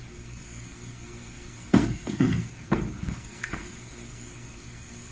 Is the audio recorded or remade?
remade